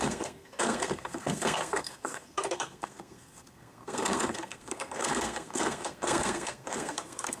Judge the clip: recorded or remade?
remade